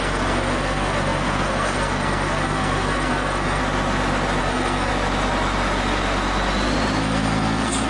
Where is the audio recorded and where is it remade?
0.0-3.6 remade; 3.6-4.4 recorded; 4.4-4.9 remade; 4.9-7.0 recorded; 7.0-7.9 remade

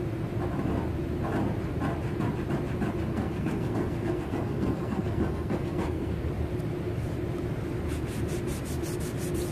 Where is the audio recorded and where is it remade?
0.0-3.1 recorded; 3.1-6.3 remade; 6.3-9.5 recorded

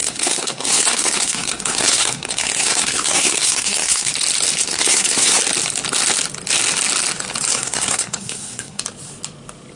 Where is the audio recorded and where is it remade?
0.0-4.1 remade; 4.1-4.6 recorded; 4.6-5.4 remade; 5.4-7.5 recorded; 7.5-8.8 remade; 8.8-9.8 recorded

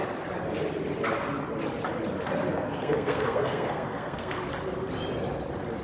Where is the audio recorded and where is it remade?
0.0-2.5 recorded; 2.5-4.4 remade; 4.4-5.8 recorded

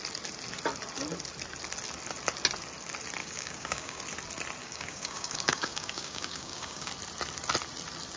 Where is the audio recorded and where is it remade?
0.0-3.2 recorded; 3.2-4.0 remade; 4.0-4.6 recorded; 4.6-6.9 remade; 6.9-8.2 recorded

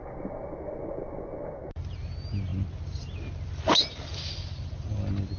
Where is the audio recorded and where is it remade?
0.0-5.4 recorded